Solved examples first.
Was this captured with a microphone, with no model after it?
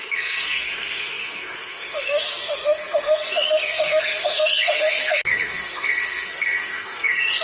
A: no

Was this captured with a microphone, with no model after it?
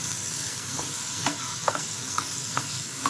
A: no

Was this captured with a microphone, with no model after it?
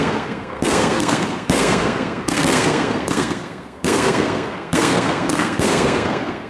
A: no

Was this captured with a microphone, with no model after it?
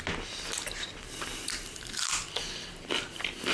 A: yes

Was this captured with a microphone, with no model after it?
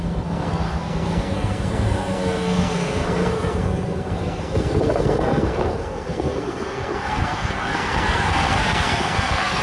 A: no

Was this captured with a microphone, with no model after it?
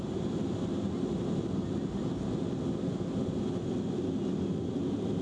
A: yes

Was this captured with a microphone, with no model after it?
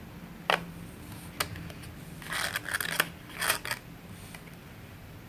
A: yes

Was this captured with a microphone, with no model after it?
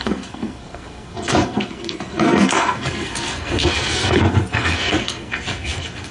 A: no